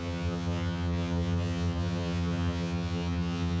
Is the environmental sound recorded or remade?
remade